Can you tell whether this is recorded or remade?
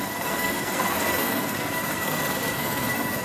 remade